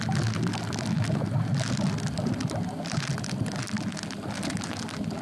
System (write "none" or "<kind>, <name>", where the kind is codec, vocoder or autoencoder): none